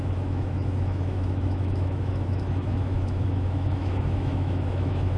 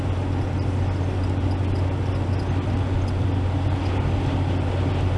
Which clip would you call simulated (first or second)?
first